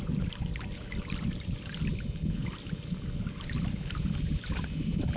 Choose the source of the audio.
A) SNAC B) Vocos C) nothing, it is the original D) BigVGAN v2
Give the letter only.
C